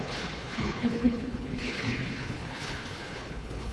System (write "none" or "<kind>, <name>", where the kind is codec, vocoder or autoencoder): codec, HILCodec